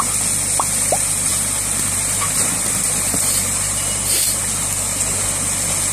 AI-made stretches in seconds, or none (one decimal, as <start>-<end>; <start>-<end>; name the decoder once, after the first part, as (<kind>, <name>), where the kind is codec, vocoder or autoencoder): 1.3-4.4 (vocoder, BigVGAN v2)